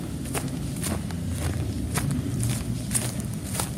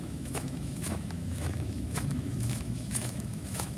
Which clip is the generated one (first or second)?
second